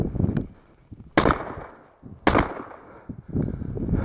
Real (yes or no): yes